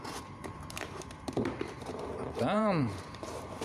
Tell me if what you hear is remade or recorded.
remade